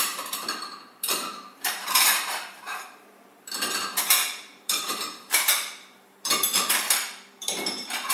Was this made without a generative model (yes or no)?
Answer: no